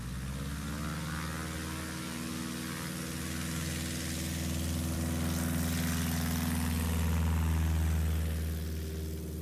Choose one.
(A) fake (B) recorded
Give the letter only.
B